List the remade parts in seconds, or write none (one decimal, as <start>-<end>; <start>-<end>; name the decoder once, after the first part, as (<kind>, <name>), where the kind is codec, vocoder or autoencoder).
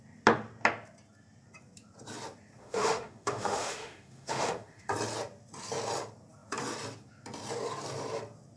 2.6-4.9 (autoencoder, DAC-VAE)